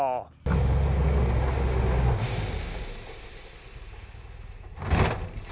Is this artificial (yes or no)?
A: no